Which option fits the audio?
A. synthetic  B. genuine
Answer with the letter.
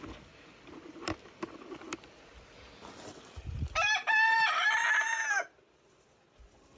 B